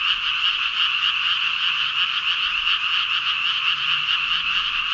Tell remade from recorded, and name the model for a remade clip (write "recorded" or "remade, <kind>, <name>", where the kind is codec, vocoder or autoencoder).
recorded